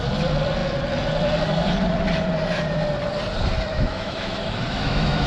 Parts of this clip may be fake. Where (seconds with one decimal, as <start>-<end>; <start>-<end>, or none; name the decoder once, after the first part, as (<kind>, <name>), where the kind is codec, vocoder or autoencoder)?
3.7-5.3 (autoencoder, DAC-VAE)